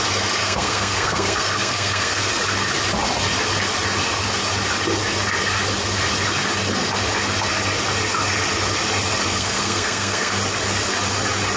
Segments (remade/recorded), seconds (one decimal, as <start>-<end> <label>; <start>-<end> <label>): 0.0-0.4 recorded; 0.4-2.3 remade; 2.3-9.3 recorded; 9.3-10.3 remade; 10.3-11.6 recorded